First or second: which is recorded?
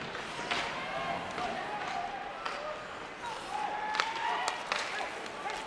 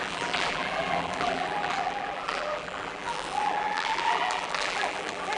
first